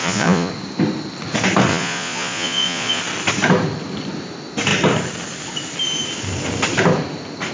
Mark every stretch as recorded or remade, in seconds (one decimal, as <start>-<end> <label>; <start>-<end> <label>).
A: 0.0-0.5 remade; 0.5-1.7 recorded; 1.7-3.0 remade; 3.0-7.5 recorded